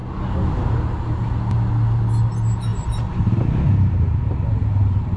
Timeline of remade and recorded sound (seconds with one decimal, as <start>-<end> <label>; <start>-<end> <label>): 0.0-5.2 recorded